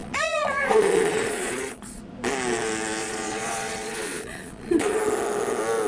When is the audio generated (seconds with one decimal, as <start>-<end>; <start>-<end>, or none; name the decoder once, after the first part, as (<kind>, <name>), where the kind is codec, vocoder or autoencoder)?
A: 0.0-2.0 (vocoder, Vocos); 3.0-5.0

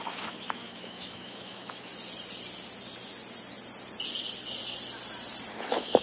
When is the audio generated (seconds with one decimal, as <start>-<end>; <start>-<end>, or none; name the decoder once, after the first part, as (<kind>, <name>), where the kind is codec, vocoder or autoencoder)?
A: 0.0-1.9 (autoencoder, DAC-VAE); 5.5-6.0

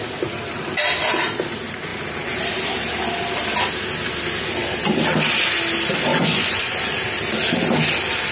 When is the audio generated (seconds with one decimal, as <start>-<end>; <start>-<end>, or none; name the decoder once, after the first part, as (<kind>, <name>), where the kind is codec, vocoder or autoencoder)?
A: 6.1-6.8 (vocoder, Vocos)

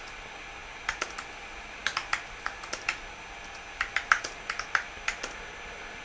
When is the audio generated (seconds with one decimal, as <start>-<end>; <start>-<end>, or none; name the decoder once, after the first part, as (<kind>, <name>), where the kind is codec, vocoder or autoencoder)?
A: none